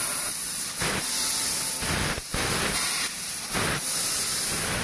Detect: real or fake real